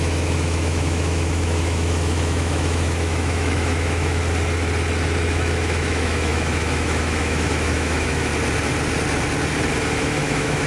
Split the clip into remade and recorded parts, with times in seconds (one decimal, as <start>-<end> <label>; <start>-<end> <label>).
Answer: 0.0-4.2 remade; 4.2-5.3 recorded; 5.3-8.3 remade; 8.3-9.9 recorded; 9.9-10.7 remade